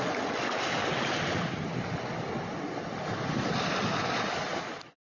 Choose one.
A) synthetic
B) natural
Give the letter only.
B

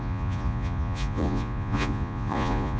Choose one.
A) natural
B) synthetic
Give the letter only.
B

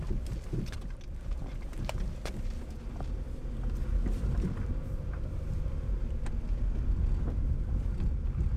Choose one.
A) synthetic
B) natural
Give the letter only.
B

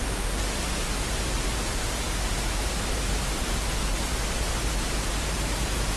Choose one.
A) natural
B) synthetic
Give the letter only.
B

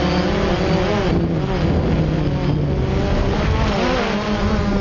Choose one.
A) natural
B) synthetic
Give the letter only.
A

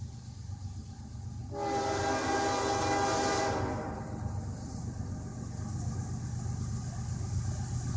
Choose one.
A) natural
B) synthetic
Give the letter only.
A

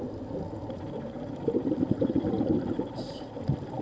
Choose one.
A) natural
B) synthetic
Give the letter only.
A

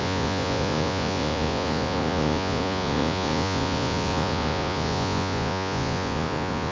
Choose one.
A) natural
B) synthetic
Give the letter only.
B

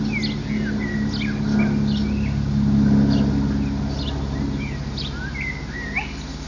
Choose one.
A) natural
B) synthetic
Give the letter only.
A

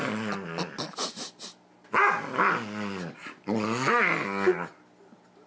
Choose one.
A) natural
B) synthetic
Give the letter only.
A